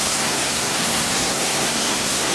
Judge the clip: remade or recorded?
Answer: remade